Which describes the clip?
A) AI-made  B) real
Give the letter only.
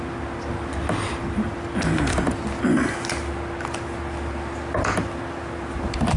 B